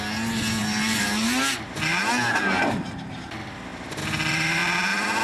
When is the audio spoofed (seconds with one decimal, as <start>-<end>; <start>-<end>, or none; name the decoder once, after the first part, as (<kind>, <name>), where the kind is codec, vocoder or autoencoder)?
none